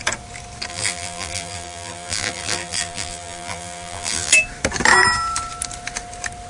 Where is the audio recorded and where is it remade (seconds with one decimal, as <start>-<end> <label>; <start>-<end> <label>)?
0.0-0.7 recorded; 0.7-4.3 remade; 4.3-6.5 recorded